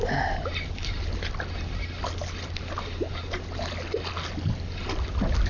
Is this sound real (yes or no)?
yes